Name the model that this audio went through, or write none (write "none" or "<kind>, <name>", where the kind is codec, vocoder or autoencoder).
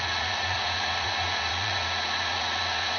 vocoder, Vocos